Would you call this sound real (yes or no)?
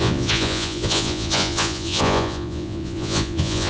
no